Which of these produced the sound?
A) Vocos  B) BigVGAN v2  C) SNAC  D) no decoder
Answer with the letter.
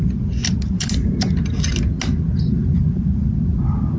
D